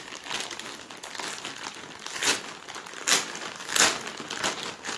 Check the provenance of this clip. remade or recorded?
recorded